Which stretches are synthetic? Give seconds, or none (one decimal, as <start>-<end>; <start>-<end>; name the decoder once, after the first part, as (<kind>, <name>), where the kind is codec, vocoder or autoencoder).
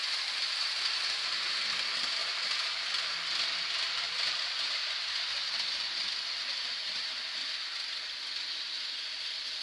none